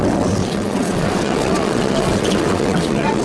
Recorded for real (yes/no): no